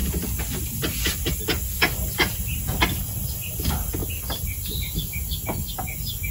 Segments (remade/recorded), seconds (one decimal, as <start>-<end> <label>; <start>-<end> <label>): 0.0-6.3 recorded